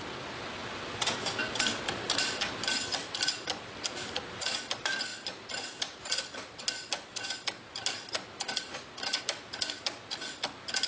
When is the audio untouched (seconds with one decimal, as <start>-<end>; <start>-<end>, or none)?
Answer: 0.0-10.9